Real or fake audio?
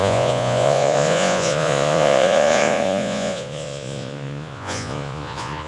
fake